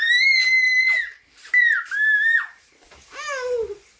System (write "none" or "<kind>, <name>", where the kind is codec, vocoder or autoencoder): none